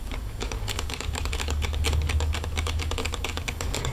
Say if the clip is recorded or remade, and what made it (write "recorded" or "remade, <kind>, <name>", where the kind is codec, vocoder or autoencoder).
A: remade, codec, DAC